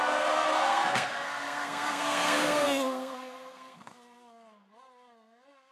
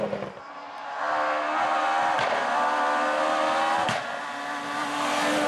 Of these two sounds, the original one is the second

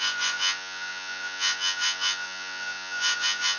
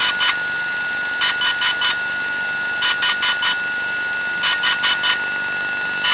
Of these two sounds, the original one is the second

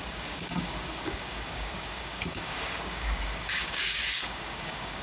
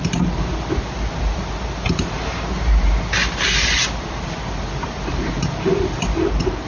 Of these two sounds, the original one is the second